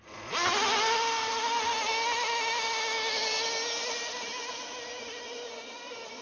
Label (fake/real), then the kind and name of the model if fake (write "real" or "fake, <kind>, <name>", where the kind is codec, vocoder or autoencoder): real